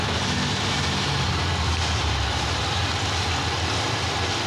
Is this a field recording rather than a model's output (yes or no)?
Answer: yes